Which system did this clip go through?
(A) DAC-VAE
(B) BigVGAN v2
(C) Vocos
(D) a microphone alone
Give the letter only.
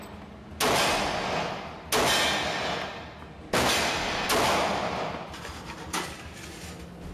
D